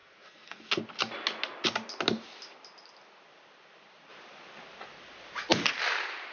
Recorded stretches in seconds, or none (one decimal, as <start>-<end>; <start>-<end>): 0.8-6.3